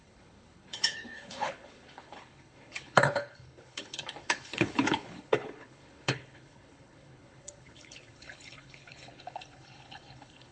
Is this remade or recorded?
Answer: remade